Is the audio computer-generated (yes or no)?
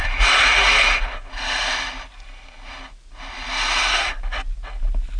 no